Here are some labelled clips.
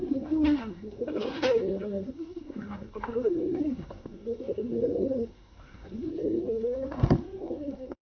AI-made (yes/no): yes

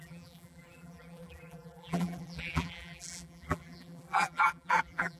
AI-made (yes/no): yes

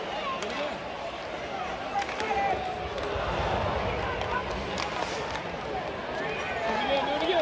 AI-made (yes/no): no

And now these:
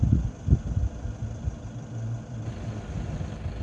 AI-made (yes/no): no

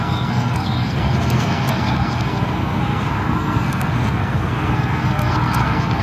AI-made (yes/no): yes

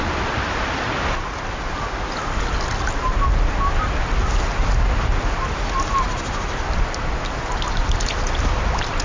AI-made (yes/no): no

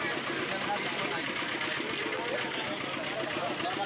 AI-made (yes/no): no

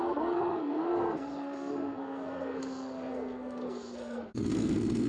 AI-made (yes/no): yes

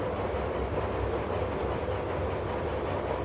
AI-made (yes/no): no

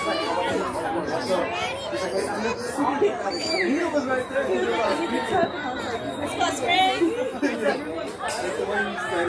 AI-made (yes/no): no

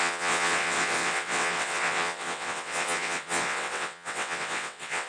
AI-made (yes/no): yes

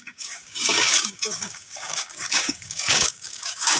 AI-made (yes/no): yes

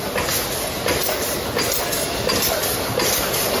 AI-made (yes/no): no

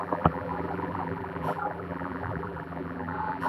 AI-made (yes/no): yes